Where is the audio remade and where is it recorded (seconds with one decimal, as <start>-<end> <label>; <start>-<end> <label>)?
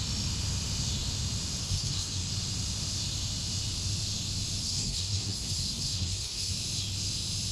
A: 0.0-1.6 recorded; 1.6-2.3 remade; 2.3-4.6 recorded; 4.6-6.5 remade; 6.5-7.5 recorded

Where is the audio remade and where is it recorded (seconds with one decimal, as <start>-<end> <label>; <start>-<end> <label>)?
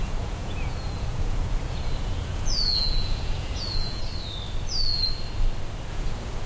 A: 0.0-4.0 remade; 4.0-5.9 recorded; 5.9-6.5 remade